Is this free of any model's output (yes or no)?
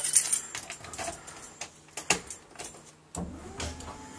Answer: yes